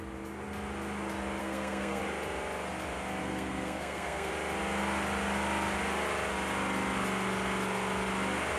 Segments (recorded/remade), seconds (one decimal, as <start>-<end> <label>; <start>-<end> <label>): 0.0-1.4 recorded; 1.4-2.0 remade; 2.0-3.2 recorded; 3.2-4.3 remade; 4.3-8.6 recorded